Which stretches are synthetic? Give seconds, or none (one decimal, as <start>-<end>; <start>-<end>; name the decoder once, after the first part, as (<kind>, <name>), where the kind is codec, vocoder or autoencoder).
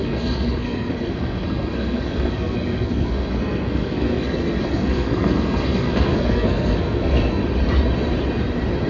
0.0-7.4 (codec, SNAC)